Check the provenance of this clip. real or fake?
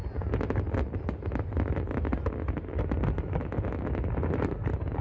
real